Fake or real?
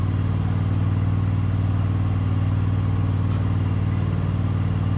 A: real